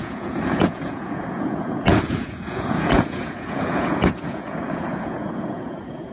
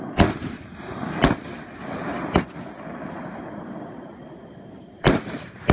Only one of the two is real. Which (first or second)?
second